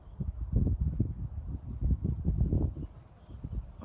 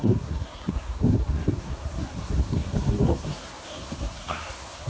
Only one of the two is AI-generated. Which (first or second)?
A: second